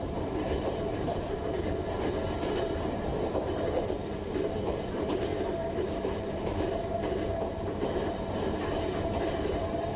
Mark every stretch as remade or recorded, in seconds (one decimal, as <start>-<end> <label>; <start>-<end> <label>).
0.0-1.1 remade; 1.1-2.6 recorded; 2.6-3.1 remade; 3.1-3.8 recorded; 3.8-10.0 remade